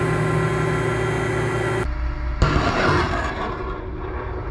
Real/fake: real